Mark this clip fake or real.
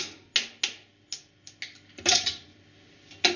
real